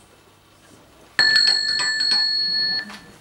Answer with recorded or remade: recorded